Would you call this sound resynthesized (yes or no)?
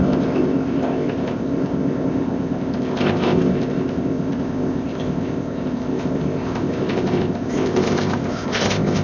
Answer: yes